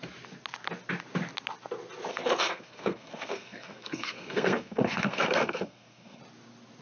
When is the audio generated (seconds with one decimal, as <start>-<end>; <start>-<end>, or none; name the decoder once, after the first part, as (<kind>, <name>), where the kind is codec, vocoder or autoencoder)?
2.1-6.2 (codec, SNAC)